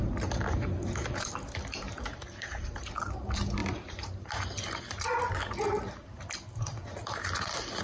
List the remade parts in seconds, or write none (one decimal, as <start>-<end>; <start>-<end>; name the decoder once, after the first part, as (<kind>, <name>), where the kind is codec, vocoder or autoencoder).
2.1-2.9 (vocoder, BigVGAN v2); 3.6-5.2